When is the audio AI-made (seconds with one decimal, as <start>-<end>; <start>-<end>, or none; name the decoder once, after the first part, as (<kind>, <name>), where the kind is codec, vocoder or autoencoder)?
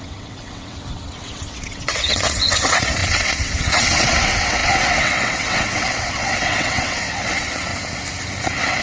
0.0-7.7 (vocoder, WaveNeXt); 8.4-8.8